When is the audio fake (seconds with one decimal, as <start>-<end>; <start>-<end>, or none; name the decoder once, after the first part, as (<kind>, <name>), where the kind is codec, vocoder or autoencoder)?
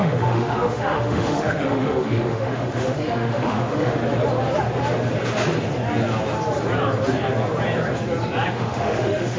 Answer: 0.0-4.0 (autoencoder, DAC-VAE); 8.5-9.4